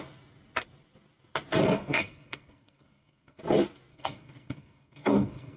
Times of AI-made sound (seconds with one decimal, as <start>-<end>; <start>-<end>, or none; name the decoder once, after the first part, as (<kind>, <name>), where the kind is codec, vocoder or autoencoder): 1.6-3.4 (codec, SNAC); 3.9-5.6